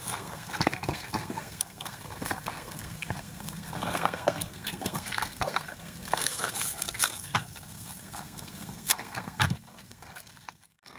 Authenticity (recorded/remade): remade